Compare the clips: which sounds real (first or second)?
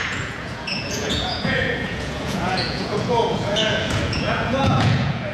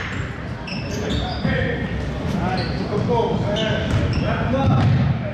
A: second